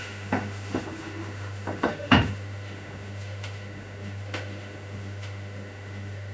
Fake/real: fake